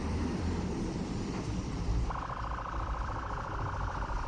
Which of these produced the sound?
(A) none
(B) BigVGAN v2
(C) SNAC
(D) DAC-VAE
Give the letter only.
B